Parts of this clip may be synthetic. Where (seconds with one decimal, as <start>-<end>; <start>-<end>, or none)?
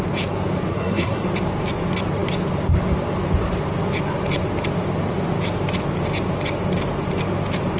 0.7-1.3